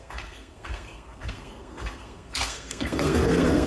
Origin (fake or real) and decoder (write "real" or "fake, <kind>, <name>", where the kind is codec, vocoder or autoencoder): fake, codec, SNAC